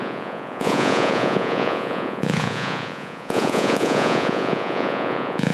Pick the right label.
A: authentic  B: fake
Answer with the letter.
B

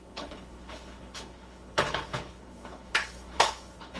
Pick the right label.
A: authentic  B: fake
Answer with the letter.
B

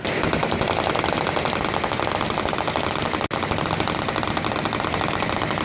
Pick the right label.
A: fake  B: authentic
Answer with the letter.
B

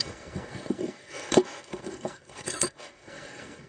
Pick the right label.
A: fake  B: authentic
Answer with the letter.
A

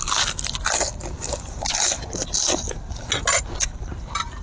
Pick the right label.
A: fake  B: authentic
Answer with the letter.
B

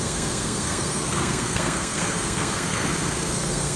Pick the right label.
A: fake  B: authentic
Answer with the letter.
A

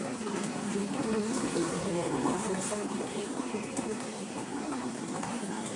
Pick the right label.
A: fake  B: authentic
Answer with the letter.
A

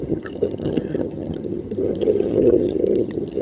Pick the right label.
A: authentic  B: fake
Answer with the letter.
B